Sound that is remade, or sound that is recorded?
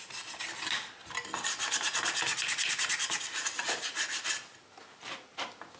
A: recorded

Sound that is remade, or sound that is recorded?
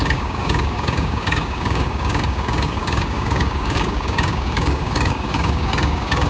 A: remade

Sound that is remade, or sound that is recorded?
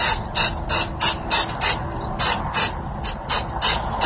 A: recorded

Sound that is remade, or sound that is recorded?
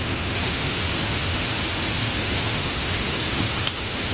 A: remade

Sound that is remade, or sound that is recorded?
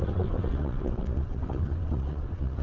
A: remade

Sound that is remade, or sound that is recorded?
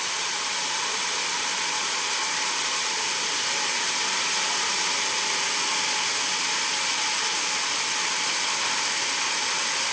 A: remade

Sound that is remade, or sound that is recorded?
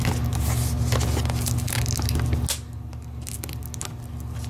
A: recorded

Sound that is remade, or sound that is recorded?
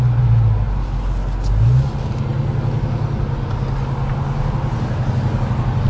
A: recorded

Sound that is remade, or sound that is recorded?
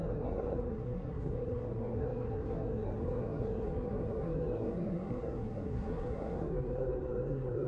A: remade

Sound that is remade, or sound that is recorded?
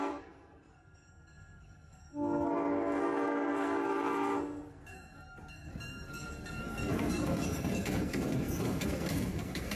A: remade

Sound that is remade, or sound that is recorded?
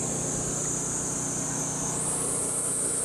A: recorded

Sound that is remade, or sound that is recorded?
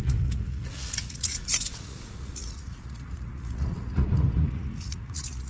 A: remade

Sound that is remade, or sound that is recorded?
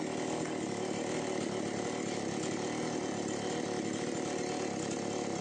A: recorded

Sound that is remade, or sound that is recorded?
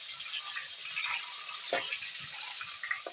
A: recorded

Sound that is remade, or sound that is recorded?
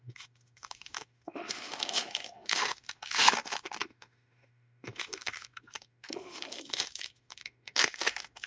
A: remade